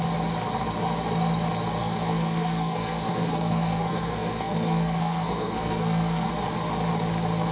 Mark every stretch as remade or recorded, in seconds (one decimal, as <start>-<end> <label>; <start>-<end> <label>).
0.0-1.8 recorded; 1.8-6.3 remade; 6.3-7.5 recorded